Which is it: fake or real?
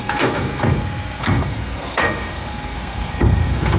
fake